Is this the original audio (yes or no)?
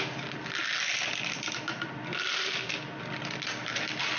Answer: yes